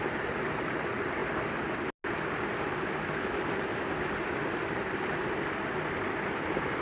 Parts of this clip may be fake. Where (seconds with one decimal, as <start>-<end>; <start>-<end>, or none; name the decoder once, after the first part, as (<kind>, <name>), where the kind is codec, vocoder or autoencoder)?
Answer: none